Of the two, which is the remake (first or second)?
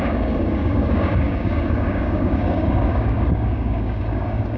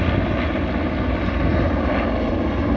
first